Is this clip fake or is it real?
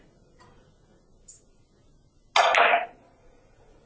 real